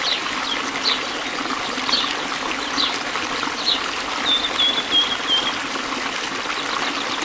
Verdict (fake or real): real